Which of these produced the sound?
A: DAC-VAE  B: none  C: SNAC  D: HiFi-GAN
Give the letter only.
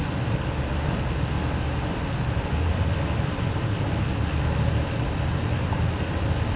B